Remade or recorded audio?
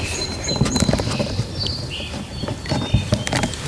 recorded